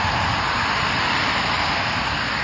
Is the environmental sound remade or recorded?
recorded